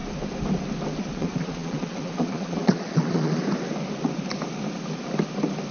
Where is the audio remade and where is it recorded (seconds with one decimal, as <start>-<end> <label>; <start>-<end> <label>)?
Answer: 0.0-1.0 recorded; 1.0-3.4 remade; 3.4-5.7 recorded